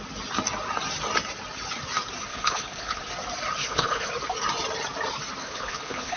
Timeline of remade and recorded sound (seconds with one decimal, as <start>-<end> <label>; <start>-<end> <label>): 0.0-2.3 recorded; 2.3-3.0 remade; 3.0-3.6 recorded; 3.6-4.1 remade; 4.1-5.4 recorded; 5.4-6.2 remade